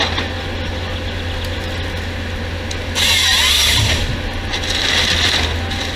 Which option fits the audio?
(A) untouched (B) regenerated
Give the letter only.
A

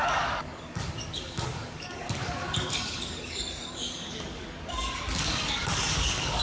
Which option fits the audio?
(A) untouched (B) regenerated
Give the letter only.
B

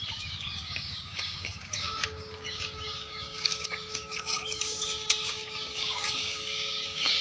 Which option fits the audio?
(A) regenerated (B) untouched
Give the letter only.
A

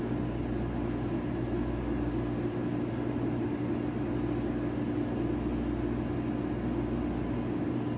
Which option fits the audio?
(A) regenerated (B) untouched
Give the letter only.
B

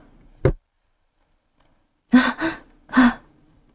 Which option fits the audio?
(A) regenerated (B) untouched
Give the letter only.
B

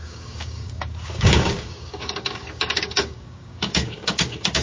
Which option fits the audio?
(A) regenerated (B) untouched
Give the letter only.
A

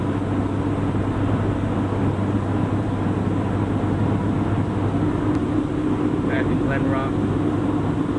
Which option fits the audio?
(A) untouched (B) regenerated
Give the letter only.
A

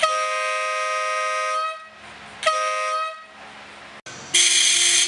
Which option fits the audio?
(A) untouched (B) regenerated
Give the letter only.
A